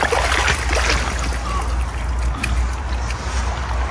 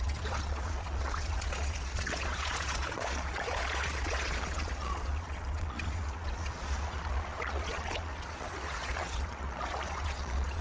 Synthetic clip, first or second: second